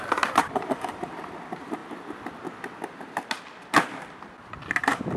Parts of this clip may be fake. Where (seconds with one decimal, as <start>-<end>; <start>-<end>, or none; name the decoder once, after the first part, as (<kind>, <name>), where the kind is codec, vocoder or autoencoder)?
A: 0.0-1.8 (vocoder, BigVGAN v2)